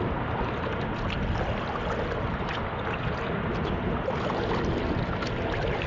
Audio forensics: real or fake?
real